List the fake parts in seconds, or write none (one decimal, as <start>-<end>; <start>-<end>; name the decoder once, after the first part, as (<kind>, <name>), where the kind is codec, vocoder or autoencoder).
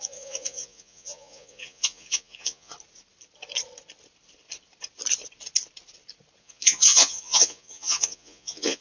0.0-2.7 (vocoder, Vocos); 6.4-8.8